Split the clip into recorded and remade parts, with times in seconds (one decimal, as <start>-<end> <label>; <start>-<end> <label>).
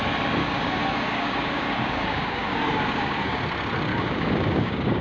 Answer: 0.0-0.4 recorded; 0.4-3.4 remade; 3.4-3.9 recorded; 3.9-5.0 remade